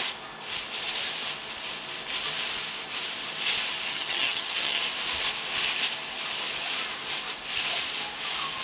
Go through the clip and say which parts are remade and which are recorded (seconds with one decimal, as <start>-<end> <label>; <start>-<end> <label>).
0.0-3.9 recorded; 3.9-4.8 remade; 4.8-8.6 recorded